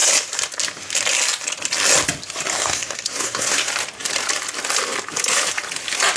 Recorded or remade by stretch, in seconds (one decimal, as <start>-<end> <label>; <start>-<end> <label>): 0.0-2.5 recorded; 2.5-3.7 remade; 3.7-6.2 recorded